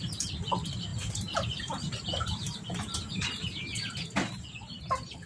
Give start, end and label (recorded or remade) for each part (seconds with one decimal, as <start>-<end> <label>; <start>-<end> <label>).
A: 0.0-5.3 recorded